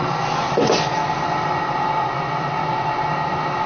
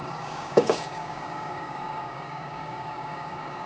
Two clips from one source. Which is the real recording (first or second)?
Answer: first